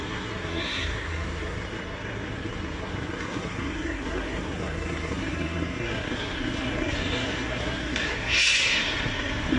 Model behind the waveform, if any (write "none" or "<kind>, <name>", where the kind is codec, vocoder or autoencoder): codec, SNAC